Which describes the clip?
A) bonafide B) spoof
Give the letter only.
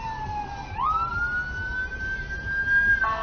A